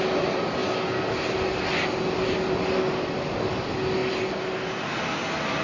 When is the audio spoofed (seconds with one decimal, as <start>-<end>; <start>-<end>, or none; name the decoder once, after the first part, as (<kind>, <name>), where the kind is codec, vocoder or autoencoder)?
none